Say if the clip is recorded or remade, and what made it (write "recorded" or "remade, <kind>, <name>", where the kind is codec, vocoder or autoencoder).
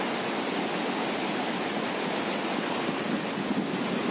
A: recorded